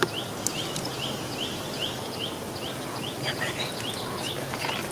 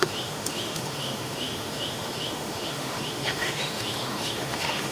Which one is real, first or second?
first